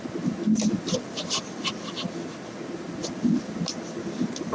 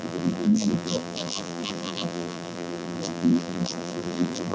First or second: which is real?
first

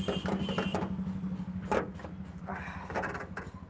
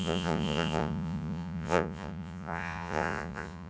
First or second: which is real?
first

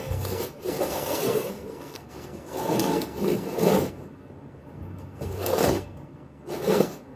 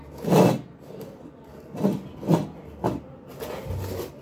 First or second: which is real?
second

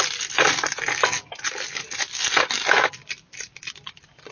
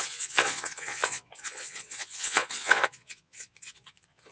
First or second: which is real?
first